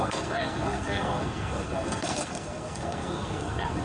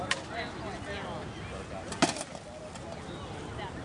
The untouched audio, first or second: second